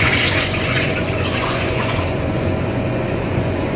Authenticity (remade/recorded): remade